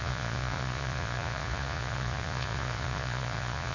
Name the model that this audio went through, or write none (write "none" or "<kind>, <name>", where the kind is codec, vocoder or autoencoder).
vocoder, Vocos